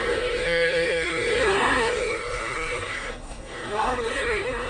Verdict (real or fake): fake